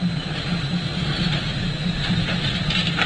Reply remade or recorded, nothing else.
recorded